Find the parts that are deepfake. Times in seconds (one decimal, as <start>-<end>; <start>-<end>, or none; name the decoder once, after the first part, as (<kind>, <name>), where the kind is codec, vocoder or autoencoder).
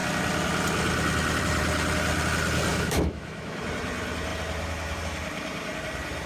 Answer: 2.7-3.6 (autoencoder, DAC-VAE)